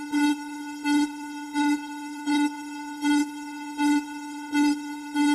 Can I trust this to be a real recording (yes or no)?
no